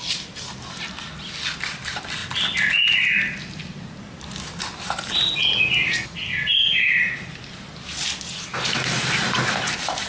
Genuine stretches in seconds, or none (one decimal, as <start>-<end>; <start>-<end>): 0.0-10.1